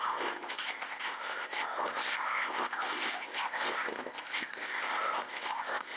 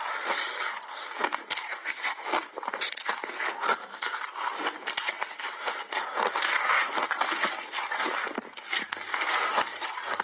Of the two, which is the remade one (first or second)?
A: first